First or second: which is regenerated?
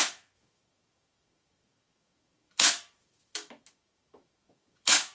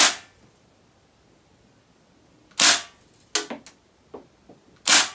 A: first